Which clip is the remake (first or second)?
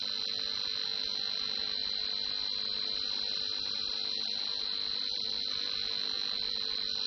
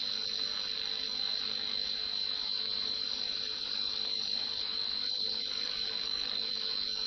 second